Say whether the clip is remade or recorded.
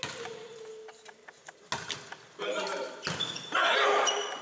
recorded